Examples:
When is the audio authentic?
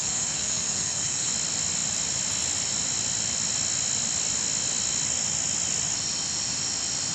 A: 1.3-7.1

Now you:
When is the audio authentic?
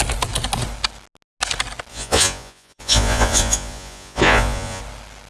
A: 0.0-1.9; 4.8-5.3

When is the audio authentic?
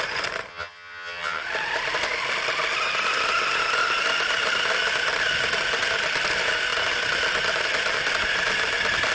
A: 0.0-0.5; 1.4-9.1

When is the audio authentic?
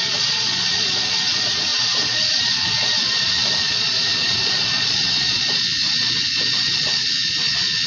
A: none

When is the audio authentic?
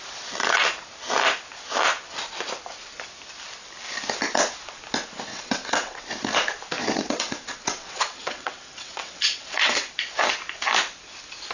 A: 0.0-5.3; 6.0-6.8; 9.9-11.5